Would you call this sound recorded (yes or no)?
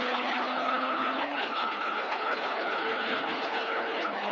no